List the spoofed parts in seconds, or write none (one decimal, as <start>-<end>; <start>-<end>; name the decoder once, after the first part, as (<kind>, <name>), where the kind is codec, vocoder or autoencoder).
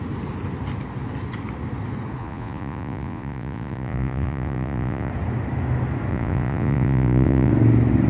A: 2.2-5.1 (vocoder, Vocos); 6.1-7.5